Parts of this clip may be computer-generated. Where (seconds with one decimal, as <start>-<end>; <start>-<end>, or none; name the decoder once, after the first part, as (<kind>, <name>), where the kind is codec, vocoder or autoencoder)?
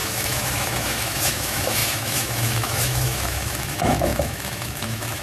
0.0-5.2 (autoencoder, DAC-VAE)